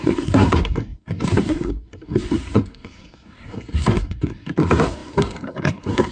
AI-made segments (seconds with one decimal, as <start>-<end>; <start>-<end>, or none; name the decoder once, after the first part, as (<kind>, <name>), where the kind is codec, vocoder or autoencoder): 0.0-6.1 (codec, SNAC)